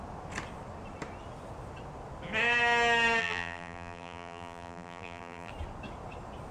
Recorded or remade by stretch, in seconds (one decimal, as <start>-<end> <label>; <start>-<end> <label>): 0.0-3.2 recorded; 3.2-5.5 remade; 5.5-6.5 recorded